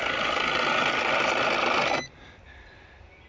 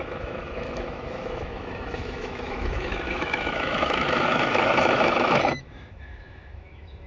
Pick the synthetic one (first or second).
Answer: second